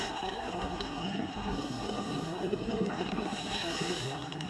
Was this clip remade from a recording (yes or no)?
yes